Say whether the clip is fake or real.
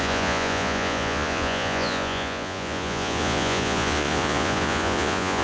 fake